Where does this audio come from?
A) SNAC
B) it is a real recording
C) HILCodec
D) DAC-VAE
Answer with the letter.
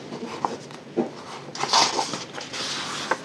B